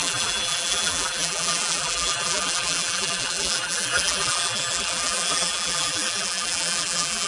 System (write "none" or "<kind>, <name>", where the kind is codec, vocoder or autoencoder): vocoder, BigVGAN v2